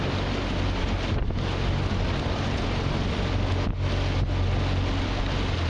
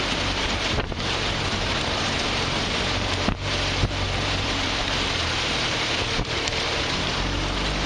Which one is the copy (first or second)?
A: second